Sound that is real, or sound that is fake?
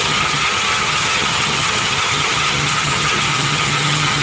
fake